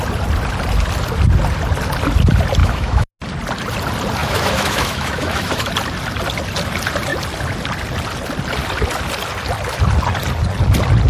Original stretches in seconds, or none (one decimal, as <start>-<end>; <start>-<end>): 0.0-2.6; 3.1-4.2; 5.7-11.1

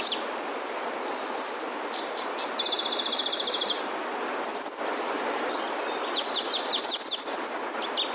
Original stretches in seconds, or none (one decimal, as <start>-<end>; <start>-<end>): 0.0-8.1

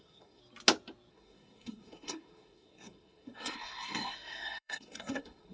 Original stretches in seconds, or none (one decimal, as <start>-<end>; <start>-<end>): 0.4-1.1

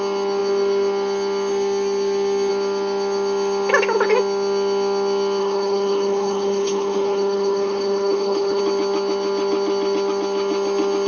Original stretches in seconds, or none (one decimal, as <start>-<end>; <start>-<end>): 0.0-5.4; 8.6-11.1

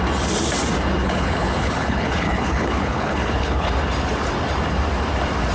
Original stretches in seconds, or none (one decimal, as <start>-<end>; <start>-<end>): 0.0-1.0; 3.7-5.5

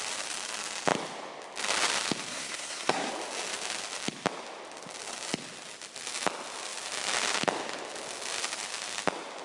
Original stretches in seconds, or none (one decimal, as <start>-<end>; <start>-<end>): 0.0-2.3; 3.1-9.4

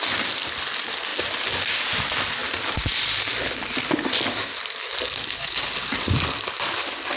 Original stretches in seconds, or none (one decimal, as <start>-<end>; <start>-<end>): 0.0-7.2

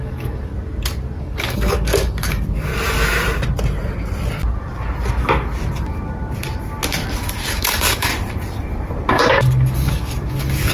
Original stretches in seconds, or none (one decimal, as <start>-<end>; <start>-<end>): 0.5-1.2; 2.7-7.5; 8.1-9.1